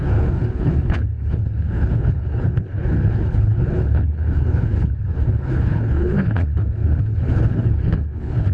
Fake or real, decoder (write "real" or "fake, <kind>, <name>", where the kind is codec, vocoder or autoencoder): fake, codec, HILCodec